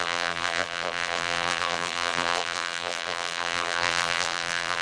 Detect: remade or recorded remade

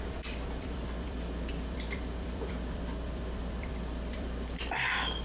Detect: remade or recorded remade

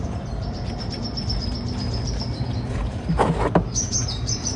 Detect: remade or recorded remade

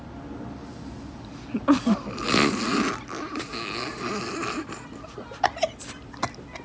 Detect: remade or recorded recorded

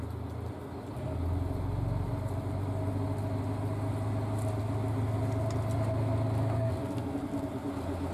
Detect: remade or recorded recorded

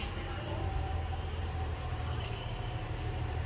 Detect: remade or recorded remade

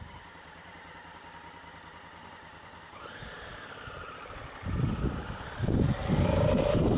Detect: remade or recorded remade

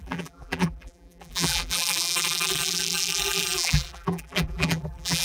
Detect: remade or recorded remade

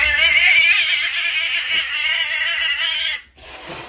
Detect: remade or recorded recorded